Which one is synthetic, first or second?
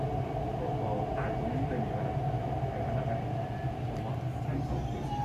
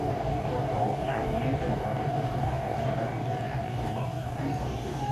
second